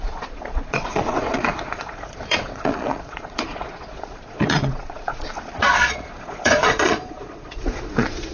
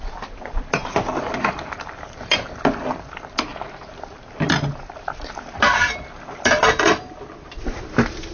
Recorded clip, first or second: second